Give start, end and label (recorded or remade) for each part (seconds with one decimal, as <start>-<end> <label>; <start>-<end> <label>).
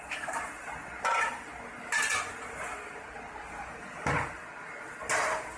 0.0-5.6 recorded